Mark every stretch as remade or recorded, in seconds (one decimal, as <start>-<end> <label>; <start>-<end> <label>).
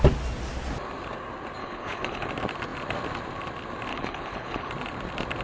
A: 0.0-1.6 recorded; 1.6-2.3 remade; 2.3-3.9 recorded; 3.9-4.7 remade; 4.7-5.4 recorded